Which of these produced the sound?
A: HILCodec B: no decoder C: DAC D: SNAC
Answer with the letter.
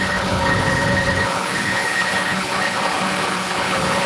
A